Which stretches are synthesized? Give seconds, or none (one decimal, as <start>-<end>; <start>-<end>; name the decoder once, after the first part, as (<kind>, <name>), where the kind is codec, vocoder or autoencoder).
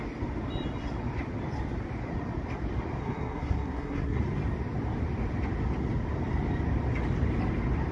3.0-4.2 (codec, SNAC)